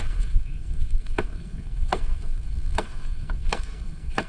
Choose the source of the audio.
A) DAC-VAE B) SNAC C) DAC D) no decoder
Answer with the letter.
B